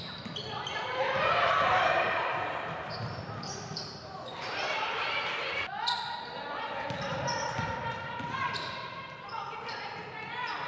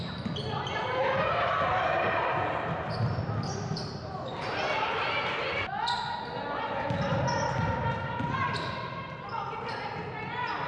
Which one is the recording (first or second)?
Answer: second